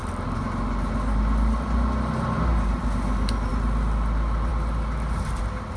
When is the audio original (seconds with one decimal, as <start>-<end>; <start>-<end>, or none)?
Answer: 0.0-5.8